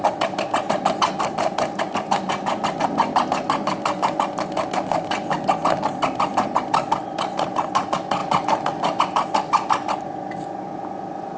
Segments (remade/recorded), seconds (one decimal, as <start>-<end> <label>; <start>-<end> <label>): 0.0-11.4 recorded